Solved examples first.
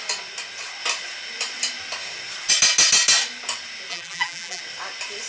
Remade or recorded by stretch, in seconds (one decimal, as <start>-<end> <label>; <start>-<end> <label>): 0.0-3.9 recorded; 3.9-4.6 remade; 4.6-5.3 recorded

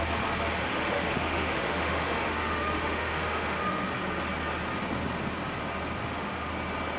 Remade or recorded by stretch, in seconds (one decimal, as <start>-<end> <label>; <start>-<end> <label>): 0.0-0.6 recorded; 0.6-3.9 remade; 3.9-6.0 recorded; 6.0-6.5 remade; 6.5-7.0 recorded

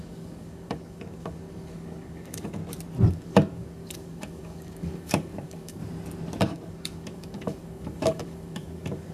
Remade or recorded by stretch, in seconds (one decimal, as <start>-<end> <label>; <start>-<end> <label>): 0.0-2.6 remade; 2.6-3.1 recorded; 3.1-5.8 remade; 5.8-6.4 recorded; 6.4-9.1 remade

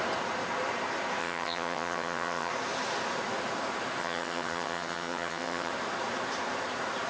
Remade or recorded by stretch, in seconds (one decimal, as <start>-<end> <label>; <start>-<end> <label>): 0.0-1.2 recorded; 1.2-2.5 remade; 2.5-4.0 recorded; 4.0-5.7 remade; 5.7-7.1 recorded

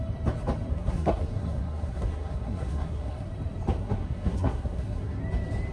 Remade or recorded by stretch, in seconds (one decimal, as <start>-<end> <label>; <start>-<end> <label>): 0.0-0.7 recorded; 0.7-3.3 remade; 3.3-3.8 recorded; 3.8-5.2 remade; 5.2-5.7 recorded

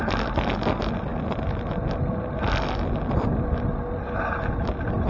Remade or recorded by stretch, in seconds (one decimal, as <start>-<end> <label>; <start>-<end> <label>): 0.0-1.1 recorded; 1.1-4.2 remade; 4.2-5.1 recorded

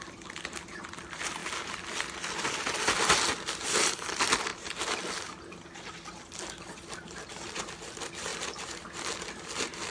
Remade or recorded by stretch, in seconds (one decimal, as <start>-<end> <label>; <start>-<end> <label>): 0.0-9.9 recorded